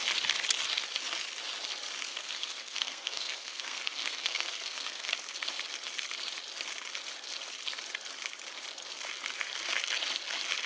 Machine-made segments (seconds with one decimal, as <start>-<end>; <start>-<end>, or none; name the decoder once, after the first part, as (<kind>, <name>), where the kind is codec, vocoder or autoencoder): 2.1-5.1 (codec, SNAC)